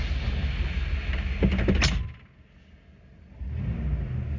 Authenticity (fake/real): real